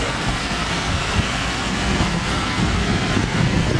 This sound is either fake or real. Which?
fake